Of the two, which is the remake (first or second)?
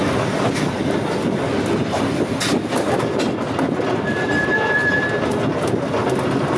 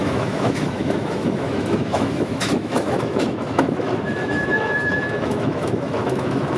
second